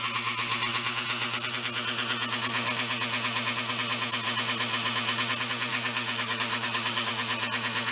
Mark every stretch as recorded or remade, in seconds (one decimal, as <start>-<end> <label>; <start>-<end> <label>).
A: 0.0-5.7 recorded; 5.7-7.1 remade; 7.1-7.9 recorded